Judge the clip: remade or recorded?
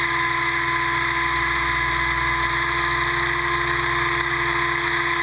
recorded